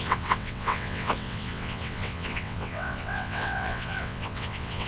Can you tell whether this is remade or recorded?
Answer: remade